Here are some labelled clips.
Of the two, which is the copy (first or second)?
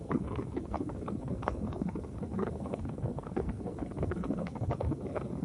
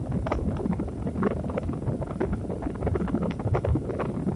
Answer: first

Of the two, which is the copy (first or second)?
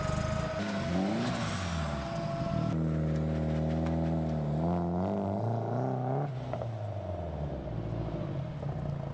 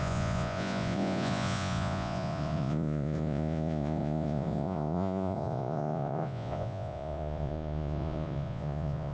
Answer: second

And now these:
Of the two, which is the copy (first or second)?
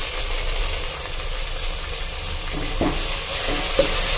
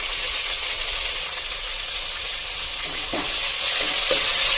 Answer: second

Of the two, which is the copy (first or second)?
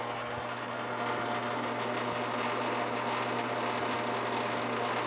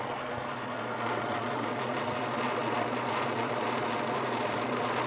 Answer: second